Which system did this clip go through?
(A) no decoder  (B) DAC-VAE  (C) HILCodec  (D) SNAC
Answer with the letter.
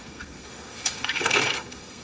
D